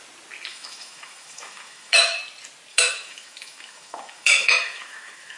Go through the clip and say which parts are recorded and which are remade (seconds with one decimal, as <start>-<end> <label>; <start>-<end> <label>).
0.0-0.5 recorded; 0.5-2.2 remade; 2.2-2.7 recorded; 2.7-5.4 remade